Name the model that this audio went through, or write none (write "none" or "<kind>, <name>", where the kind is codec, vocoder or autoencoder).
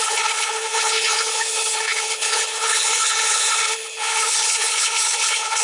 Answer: codec, HILCodec